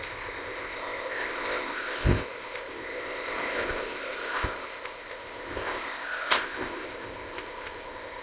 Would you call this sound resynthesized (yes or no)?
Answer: yes